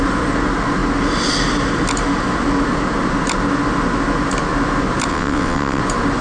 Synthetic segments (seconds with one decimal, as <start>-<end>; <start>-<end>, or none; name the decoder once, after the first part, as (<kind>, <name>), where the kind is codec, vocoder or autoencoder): 5.1-5.8 (vocoder, WaveNeXt)